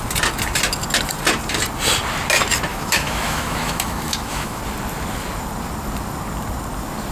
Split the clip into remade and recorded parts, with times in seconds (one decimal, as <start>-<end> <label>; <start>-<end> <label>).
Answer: 0.0-2.7 recorded; 2.7-4.6 remade; 4.6-7.1 recorded